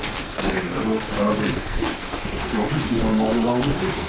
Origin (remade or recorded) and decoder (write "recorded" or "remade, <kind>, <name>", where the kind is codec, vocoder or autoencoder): remade, codec, SNAC